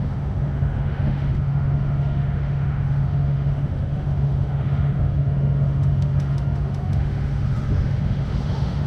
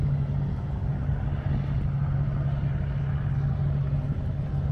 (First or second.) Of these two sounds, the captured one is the second